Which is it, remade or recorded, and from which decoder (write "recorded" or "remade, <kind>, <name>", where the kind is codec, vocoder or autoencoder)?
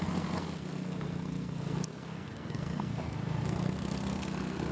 remade, codec, SNAC